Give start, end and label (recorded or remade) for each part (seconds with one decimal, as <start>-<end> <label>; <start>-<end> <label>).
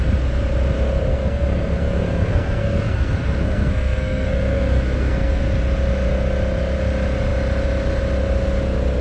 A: 0.0-1.1 recorded; 1.1-5.4 remade; 5.4-9.0 recorded